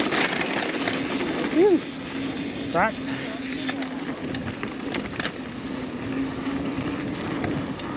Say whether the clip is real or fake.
real